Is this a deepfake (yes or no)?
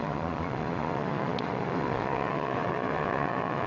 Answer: yes